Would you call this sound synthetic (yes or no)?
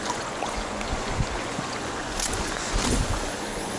yes